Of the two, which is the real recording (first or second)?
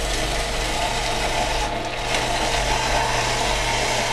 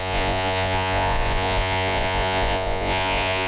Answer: first